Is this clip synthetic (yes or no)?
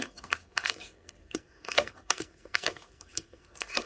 yes